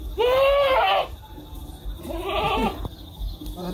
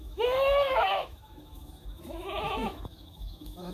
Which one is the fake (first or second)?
second